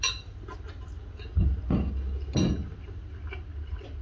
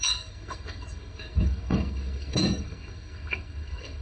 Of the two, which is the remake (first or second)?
second